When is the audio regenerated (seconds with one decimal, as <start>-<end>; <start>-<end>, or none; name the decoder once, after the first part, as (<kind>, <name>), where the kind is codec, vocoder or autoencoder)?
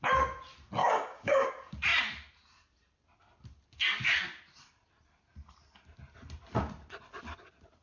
0.8-1.5 (codec, DAC)